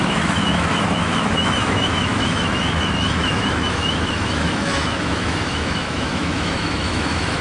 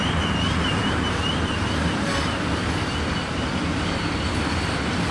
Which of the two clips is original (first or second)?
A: second